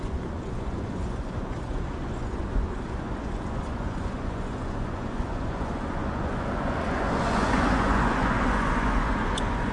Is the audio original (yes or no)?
no